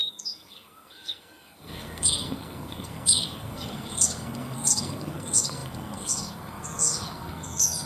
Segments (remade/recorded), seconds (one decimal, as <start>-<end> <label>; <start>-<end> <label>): 0.0-7.9 remade